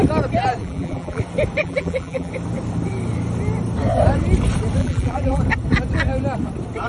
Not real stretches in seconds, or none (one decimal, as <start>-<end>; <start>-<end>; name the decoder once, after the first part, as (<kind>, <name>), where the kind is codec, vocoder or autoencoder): 0.6-1.2 (vocoder, BigVGAN v2); 1.6-2.3; 4.8-5.4